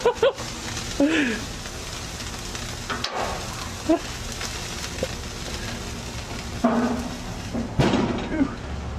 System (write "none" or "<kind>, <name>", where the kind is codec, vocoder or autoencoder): none